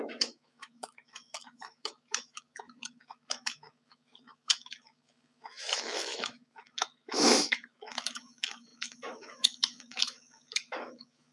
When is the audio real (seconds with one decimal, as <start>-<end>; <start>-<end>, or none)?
none

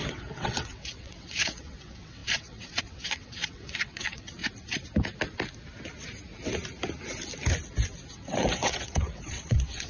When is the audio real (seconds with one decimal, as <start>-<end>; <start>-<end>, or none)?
4.4-8.1

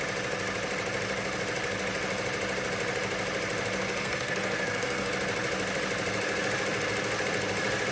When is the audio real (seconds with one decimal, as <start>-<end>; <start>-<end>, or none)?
0.0-3.8; 5.1-7.9

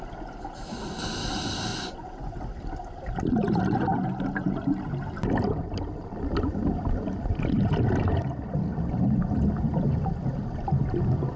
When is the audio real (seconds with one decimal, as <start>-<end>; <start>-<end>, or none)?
0.0-1.7; 2.4-11.4